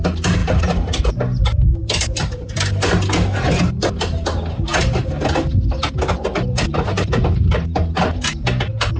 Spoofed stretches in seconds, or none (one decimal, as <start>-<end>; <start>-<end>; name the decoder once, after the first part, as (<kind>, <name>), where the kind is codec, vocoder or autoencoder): 0.4-1.0 (vocoder, BigVGAN v2); 1.8-2.5